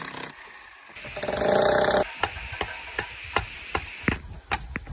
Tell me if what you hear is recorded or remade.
recorded